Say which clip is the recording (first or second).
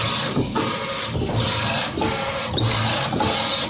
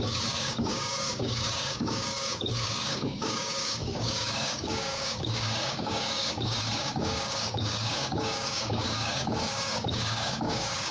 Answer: first